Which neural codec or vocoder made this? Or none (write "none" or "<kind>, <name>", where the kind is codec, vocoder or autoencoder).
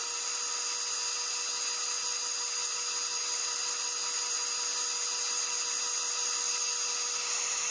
none